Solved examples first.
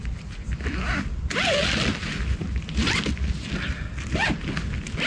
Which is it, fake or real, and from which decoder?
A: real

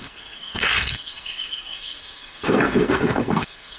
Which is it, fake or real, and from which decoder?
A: fake, codec, SNAC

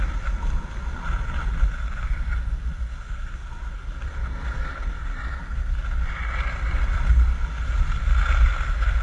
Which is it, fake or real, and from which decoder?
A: real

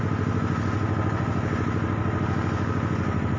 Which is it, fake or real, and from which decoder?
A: real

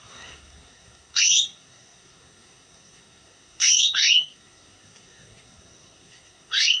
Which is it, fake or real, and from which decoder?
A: fake, codec, SNAC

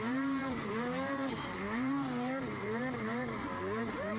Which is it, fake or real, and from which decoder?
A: fake, vocoder, BigVGAN v2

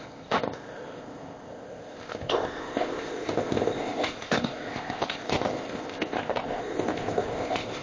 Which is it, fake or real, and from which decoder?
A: fake, codec, ZipCodec